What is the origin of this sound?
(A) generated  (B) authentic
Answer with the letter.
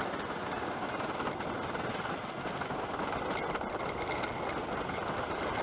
B